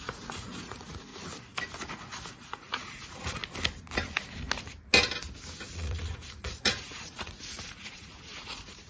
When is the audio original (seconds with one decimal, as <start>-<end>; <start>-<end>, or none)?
1.1-2.3; 3.4-5.7